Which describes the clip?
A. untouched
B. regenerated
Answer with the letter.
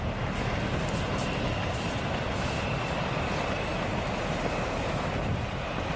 A